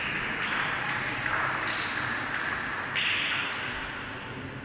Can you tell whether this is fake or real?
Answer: real